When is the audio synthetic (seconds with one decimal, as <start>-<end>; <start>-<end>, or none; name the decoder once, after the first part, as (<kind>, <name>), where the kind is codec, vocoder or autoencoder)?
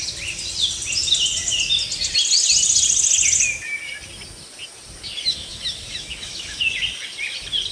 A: 5.3-6.6 (autoencoder, DAC-VAE)